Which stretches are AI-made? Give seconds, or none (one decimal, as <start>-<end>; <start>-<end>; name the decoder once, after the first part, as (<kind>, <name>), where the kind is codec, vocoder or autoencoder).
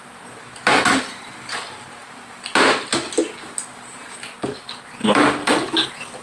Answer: none